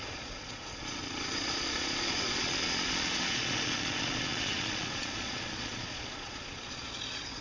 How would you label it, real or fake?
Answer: fake